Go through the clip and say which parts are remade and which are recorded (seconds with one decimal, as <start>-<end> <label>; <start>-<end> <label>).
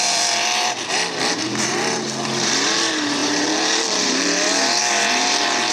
0.0-5.7 remade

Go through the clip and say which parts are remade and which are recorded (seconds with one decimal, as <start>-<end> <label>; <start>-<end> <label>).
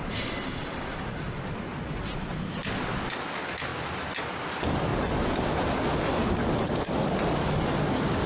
0.0-2.3 remade; 2.3-8.3 recorded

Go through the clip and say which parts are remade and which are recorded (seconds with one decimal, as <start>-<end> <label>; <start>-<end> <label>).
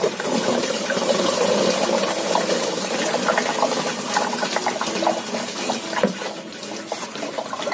0.0-0.6 recorded; 0.6-1.3 remade; 1.3-7.7 recorded